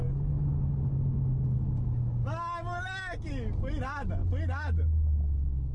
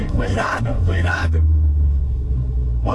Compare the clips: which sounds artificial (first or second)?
second